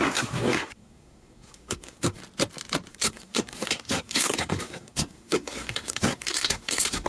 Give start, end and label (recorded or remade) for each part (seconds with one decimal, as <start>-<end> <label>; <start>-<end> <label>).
0.0-2.2 remade; 2.2-2.9 recorded; 2.9-7.1 remade